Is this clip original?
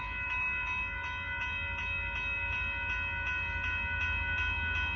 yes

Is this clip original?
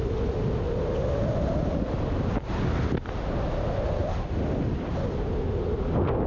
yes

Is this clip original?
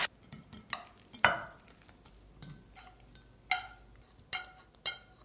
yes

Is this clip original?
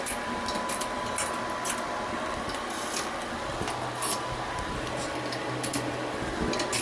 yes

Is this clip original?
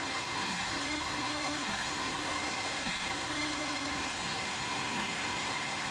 no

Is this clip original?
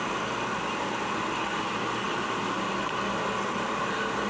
yes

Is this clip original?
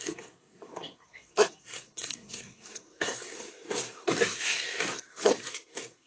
no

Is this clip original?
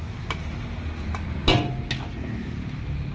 yes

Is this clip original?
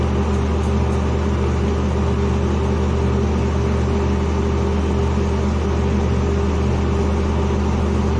yes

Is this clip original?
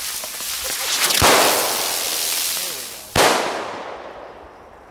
yes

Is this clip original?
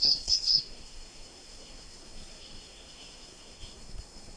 no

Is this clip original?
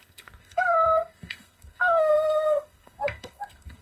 no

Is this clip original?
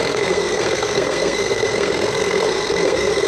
no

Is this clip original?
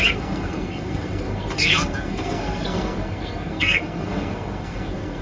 no